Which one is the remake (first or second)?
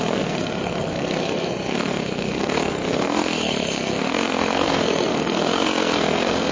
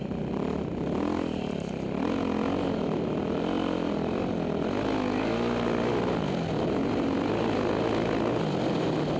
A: first